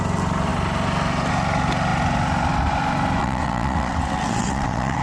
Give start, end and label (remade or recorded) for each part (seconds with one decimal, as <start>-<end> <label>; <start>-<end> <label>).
0.0-3.2 recorded; 3.2-5.0 remade